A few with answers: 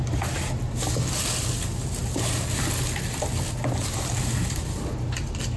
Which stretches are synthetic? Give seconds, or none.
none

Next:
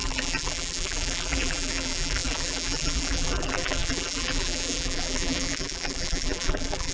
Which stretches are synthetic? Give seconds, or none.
0.0-6.9 (vocoder, BigVGAN v2)